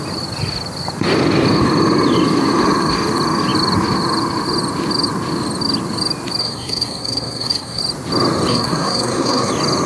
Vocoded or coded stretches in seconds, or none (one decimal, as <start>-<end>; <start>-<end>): 6.4-7.8; 8.5-9.5